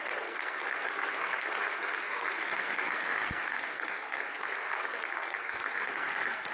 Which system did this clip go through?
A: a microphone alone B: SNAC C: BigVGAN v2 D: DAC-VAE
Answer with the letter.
B